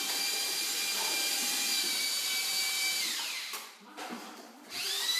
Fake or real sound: fake